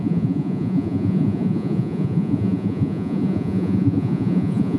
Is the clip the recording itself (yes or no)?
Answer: no